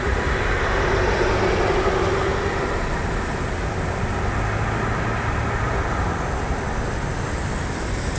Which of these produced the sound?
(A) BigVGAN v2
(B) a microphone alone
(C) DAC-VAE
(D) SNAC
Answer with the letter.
B